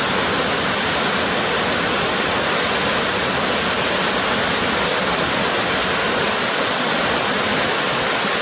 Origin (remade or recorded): recorded